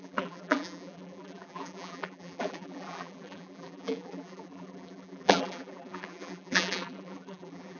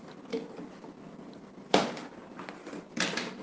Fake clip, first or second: first